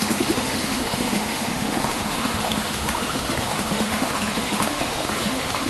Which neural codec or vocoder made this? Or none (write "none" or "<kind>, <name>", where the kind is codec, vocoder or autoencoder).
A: autoencoder, DAC-VAE